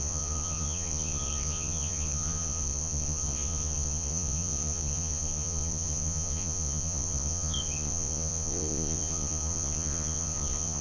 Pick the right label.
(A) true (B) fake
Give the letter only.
B